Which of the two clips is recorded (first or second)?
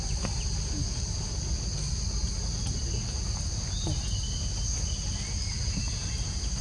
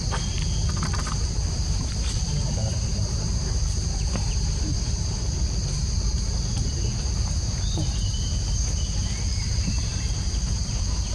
first